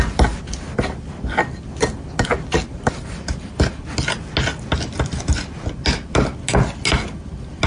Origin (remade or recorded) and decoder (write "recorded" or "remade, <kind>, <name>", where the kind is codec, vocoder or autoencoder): recorded